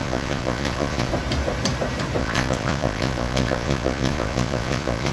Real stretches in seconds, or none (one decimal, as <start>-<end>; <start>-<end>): 1.1-2.2